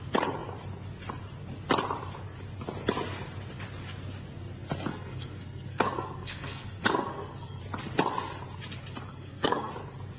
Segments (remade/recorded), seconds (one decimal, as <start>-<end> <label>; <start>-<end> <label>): 0.0-4.9 recorded; 4.9-7.6 remade; 7.6-9.1 recorded; 9.1-9.7 remade; 9.7-10.2 recorded